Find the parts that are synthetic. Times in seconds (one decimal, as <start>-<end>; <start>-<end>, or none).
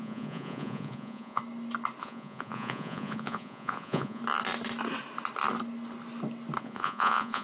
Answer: 0.0-1.4; 2.0-4.2; 6.6-7.4